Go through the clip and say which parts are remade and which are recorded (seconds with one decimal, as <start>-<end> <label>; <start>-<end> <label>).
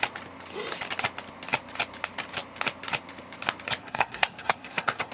0.0-3.8 recorded; 3.8-5.1 remade